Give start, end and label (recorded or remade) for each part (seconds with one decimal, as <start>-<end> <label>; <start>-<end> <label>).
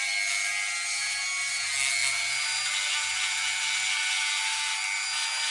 0.0-5.5 recorded